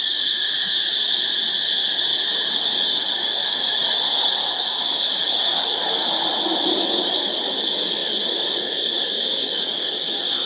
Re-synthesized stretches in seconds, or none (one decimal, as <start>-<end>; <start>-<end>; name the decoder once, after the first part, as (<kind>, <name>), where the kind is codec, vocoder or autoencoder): 0.0-0.5 (codec, DAC); 2.5-6.0; 6.6-10.5